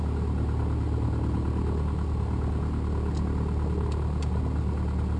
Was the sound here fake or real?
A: real